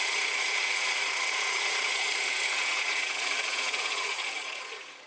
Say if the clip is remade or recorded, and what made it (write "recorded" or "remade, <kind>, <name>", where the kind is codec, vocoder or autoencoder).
remade, vocoder, Vocos